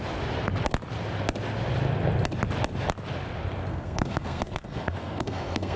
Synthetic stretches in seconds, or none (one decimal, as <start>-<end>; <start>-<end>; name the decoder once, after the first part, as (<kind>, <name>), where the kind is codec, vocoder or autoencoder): 3.7-5.8 (codec, SNAC)